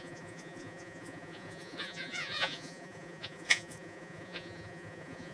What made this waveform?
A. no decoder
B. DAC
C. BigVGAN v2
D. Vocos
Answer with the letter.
D